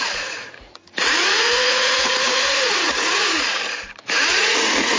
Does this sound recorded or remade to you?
remade